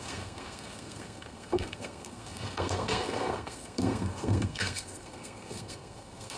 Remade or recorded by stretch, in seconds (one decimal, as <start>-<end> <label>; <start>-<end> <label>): 0.0-6.4 remade